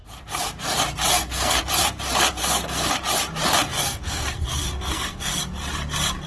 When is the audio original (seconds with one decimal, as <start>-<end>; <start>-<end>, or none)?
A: 0.0-1.1; 1.6-2.4; 2.9-3.7; 5.4-6.3